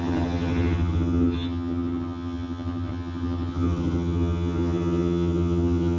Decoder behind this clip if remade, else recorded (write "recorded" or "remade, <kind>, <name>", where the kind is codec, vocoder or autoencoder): remade, vocoder, HiFi-GAN